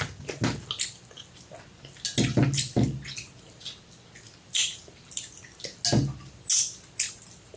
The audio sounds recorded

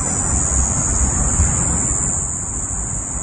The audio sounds recorded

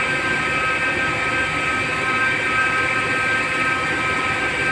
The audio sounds recorded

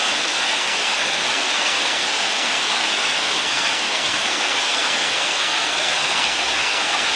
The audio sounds remade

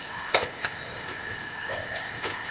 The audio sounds remade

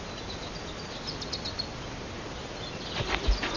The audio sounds recorded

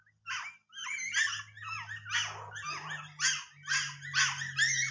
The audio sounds recorded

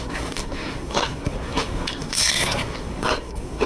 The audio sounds remade